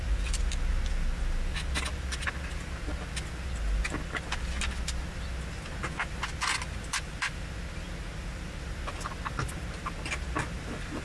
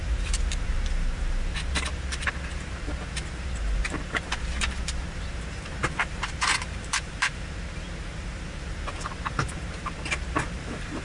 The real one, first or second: first